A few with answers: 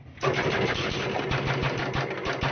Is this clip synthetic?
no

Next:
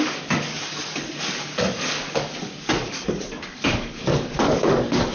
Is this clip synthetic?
yes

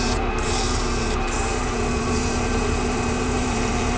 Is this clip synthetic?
yes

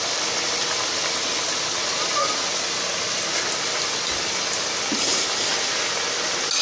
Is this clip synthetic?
no